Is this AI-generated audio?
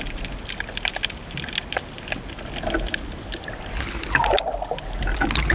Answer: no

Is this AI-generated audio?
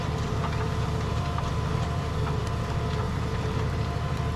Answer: yes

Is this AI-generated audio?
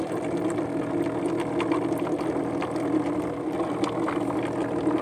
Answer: no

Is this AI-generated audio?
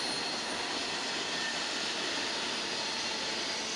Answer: no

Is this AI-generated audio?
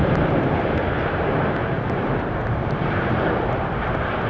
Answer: yes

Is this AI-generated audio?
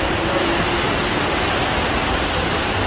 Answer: no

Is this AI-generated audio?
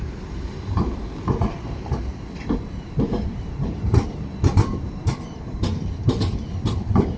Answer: yes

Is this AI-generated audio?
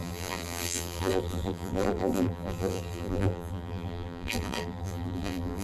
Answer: yes